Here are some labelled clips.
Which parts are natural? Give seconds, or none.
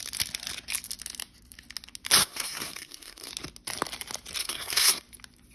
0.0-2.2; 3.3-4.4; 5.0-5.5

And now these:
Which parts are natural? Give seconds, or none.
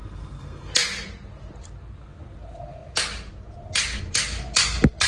0.7-5.1